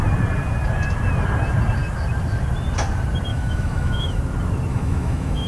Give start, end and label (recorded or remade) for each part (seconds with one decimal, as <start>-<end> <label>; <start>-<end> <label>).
0.0-3.3 recorded; 3.3-4.2 remade; 4.2-4.7 recorded; 4.7-5.5 remade

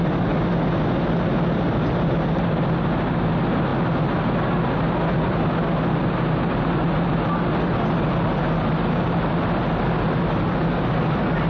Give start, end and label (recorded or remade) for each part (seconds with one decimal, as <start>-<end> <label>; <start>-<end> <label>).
0.0-11.5 recorded

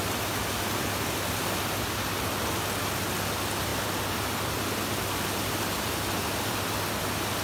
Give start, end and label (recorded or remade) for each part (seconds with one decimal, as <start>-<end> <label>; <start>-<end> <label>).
0.0-7.4 recorded